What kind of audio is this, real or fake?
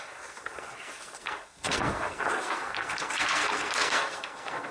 fake